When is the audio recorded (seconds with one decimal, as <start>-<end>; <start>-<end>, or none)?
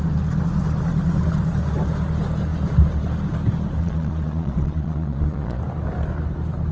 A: 0.0-3.8; 5.6-6.7